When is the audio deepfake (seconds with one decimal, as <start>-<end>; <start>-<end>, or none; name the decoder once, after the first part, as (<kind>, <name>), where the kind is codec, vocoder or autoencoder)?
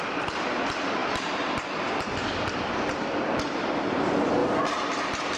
0.0-4.4 (vocoder, BigVGAN v2)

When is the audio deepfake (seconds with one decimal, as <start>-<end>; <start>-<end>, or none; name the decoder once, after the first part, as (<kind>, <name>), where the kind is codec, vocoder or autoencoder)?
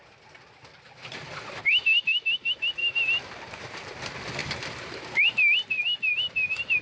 2.8-4.0 (vocoder, BigVGAN v2)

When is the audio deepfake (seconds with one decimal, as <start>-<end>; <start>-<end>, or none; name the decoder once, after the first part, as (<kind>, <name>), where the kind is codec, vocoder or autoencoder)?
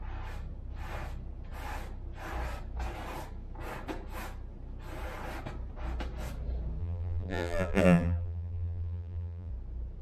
6.8-9.5 (vocoder, BigVGAN v2)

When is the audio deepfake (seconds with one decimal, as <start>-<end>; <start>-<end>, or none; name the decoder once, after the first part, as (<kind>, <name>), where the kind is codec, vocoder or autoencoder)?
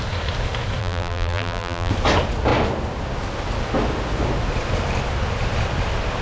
0.8-1.9 (vocoder, BigVGAN v2)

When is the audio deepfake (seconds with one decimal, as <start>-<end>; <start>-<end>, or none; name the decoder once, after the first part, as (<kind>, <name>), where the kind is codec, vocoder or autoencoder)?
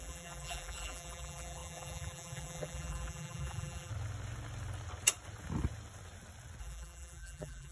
0.0-3.9 (vocoder, BigVGAN v2); 6.6-7.7